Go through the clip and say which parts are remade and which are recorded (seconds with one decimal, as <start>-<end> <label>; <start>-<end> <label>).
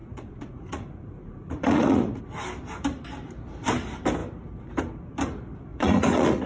0.0-2.2 remade; 2.2-5.7 recorded; 5.7-6.5 remade